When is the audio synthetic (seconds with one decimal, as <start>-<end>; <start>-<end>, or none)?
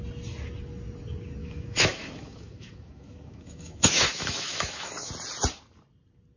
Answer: 1.4-5.1